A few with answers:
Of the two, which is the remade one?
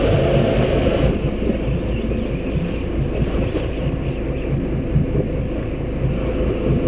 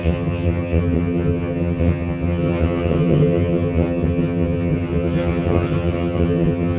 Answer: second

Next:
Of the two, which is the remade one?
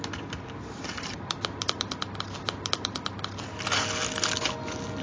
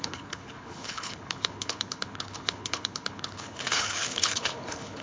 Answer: second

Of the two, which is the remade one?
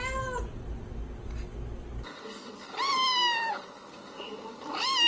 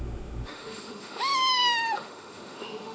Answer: second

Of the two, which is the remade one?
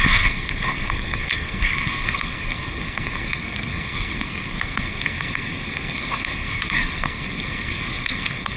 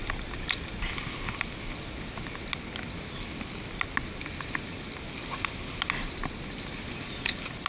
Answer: first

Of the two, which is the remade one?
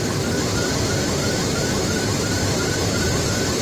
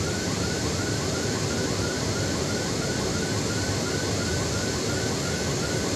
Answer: first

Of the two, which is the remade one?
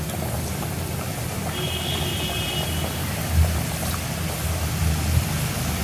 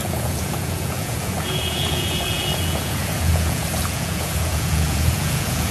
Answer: second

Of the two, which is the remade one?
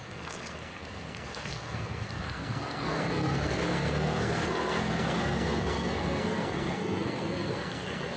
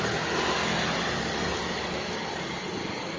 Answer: first